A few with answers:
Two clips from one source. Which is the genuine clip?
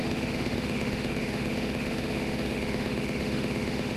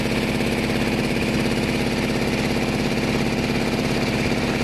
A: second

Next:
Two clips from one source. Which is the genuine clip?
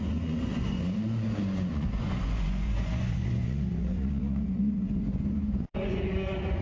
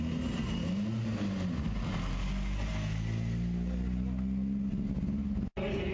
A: second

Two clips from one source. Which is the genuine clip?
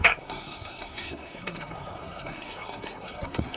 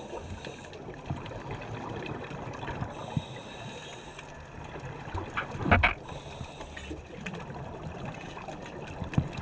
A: second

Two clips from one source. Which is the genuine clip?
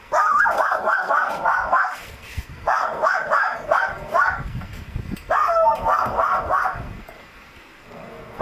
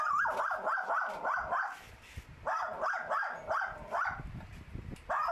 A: second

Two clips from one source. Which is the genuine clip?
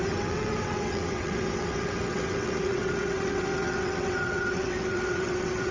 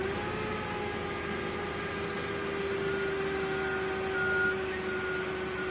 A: second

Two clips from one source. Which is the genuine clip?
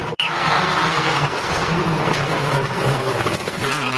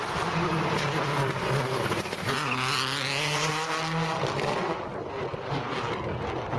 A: second